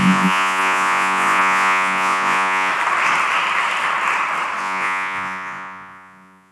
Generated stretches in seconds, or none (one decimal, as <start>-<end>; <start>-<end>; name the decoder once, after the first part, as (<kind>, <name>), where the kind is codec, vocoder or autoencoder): 0.0-2.7 (vocoder, Vocos); 4.6-6.5